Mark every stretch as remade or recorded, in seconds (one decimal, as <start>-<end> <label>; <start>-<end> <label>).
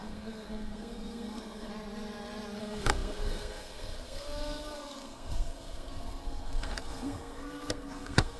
0.0-1.7 remade; 1.7-2.6 recorded; 2.6-8.4 remade